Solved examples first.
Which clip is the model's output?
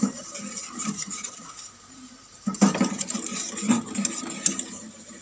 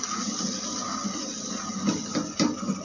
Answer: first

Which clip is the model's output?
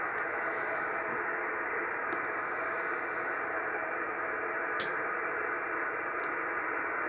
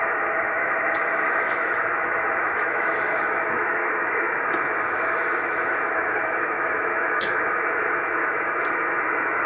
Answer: second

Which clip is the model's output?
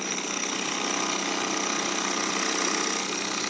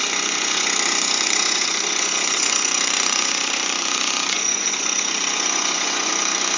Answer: second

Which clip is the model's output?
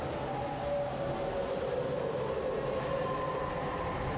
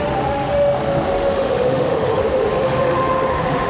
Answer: second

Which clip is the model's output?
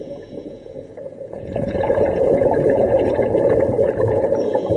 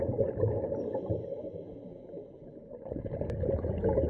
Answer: first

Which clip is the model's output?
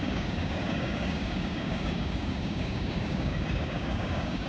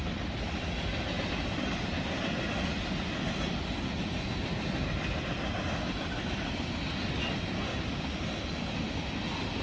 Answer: first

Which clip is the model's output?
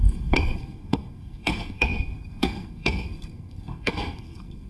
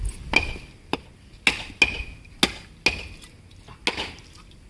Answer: first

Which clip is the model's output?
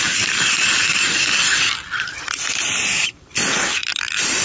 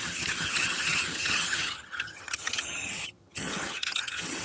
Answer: second